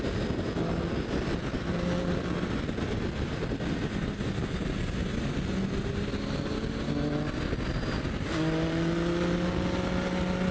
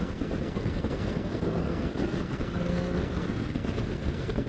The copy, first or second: second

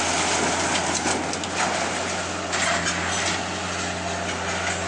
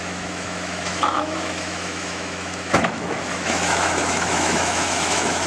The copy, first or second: second